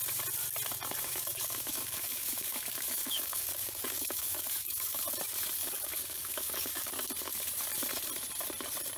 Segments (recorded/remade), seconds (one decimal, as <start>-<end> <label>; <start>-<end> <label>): 0.0-1.0 recorded; 1.0-5.0 remade; 5.0-5.6 recorded; 5.6-6.9 remade; 6.9-9.0 recorded